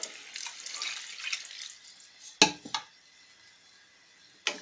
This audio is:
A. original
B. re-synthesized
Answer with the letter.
A